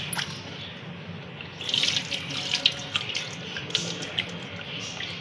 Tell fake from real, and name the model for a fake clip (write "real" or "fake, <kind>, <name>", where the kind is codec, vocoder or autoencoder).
real